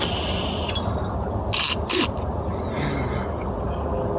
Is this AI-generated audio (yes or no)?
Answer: no